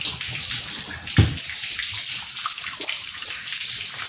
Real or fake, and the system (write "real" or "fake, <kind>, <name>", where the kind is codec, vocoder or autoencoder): real